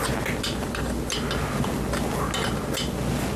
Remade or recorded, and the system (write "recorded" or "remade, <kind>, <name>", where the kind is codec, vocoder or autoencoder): recorded